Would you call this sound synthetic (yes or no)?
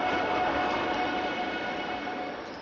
no